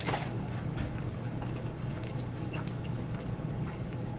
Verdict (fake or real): fake